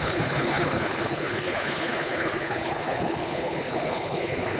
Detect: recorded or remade remade